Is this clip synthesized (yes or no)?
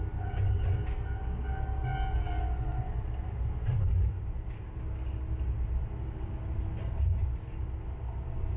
no